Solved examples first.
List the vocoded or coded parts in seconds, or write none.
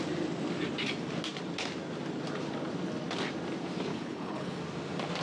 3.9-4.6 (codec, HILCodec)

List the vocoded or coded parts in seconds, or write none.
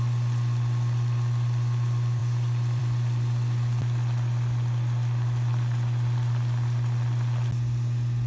none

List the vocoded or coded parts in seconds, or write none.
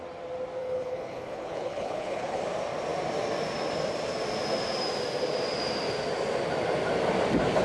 0.6-2.4 (codec, HILCodec)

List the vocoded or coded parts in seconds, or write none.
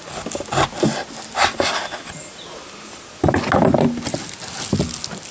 none